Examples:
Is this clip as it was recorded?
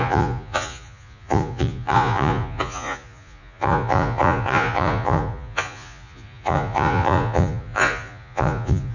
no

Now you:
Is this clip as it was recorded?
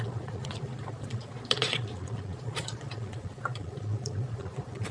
no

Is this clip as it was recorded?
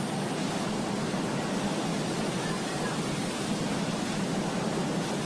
yes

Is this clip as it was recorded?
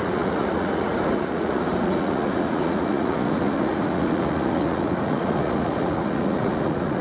no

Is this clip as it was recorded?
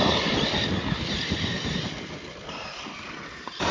yes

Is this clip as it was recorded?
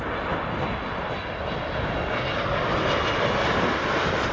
yes